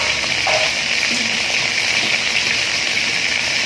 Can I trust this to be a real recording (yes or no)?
yes